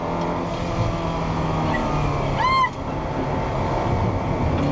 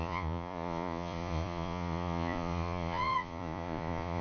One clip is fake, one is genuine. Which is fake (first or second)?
second